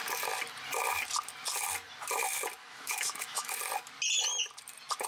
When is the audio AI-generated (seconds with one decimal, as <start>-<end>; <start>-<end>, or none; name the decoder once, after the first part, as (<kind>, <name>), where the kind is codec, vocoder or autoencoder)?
2.6-3.6 (autoencoder, DAC-VAE)